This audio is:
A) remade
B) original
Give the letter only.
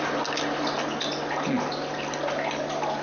B